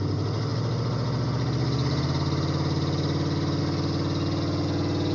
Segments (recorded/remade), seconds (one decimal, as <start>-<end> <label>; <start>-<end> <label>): 0.0-5.1 recorded